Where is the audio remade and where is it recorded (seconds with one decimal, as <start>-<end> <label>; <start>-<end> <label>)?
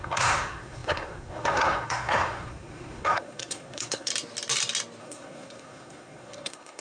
0.0-4.1 remade; 4.1-5.0 recorded; 5.0-6.8 remade